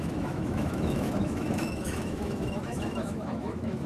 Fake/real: fake